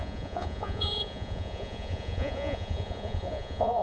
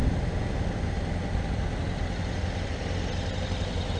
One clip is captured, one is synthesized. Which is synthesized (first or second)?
first